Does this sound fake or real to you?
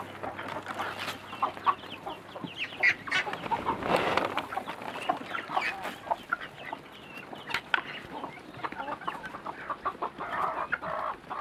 real